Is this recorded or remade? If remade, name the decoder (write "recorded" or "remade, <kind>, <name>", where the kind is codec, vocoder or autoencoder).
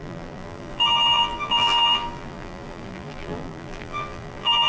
remade, vocoder, BigVGAN v2